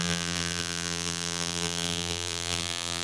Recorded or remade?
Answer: remade